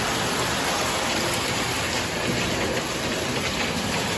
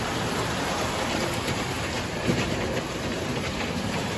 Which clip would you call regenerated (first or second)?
second